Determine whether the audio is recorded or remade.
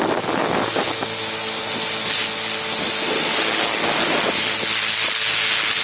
recorded